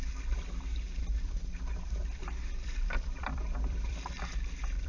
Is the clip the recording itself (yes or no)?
no